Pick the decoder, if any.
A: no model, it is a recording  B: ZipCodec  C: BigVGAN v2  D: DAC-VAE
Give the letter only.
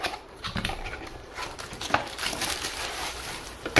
C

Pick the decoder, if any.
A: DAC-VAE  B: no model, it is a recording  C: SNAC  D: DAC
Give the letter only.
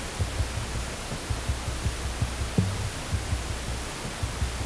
B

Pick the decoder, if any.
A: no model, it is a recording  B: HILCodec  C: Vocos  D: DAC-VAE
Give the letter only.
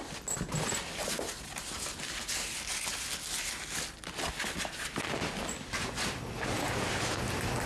A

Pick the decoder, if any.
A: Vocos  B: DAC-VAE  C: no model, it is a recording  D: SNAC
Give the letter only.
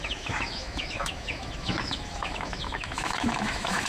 B